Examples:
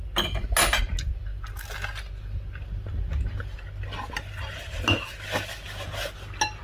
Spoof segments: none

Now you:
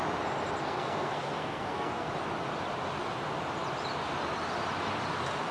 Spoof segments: 0.6-2.1 (codec, SNAC)

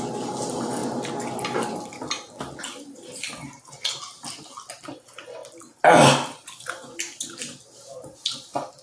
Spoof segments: none

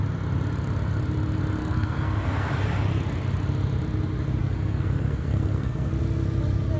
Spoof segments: 1.6-2.5 (codec, SNAC); 4.4-5.9

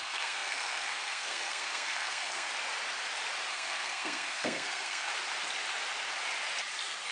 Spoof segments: 0.0-2.5 (codec, SNAC); 3.5-5.1

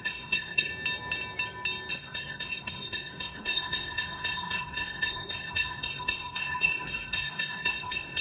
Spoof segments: 0.0-0.7 (codec, SNAC); 1.9-8.2